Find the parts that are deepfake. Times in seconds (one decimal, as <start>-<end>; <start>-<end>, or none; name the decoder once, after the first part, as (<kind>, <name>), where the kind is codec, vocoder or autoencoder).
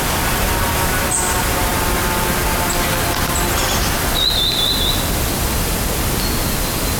none